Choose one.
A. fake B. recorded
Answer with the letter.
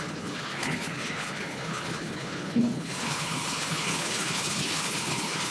A